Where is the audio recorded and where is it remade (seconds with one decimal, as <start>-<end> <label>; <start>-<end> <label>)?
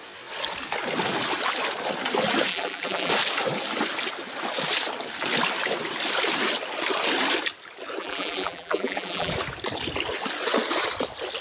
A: 0.0-2.5 recorded; 2.5-3.1 remade; 3.1-8.0 recorded; 8.0-9.3 remade; 9.3-11.4 recorded